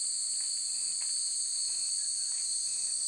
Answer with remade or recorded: recorded